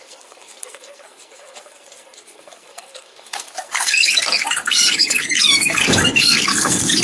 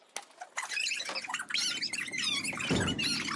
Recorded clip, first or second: second